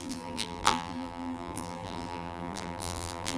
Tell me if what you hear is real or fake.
fake